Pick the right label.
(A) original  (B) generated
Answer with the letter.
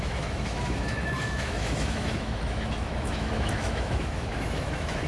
B